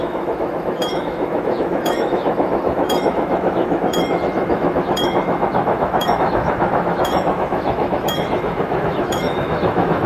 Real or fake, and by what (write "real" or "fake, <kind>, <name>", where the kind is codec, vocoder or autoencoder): fake, autoencoder, DAC-VAE